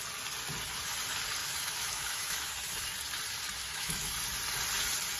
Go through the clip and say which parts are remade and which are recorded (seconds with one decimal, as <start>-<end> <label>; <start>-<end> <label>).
0.0-1.4 recorded; 1.4-2.5 remade; 2.5-3.6 recorded; 3.6-4.1 remade; 4.1-5.2 recorded